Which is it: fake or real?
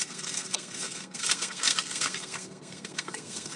fake